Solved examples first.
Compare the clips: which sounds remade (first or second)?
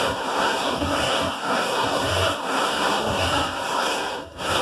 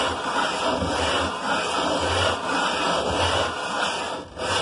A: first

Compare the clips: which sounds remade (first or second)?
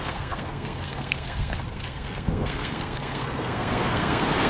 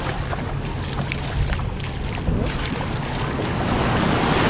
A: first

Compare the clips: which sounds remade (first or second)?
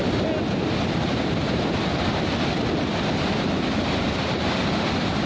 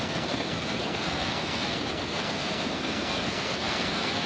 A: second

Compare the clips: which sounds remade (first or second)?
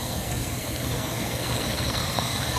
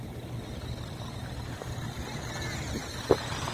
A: first